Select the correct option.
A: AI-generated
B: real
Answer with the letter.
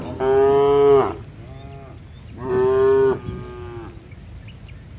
B